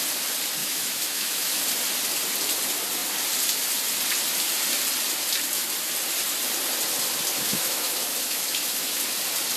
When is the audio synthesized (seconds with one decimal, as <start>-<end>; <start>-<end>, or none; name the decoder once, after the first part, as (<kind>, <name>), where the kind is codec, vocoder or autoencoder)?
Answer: 0.6-1.6 (autoencoder, DAC-VAE); 7.5-9.0